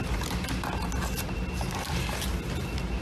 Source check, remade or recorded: recorded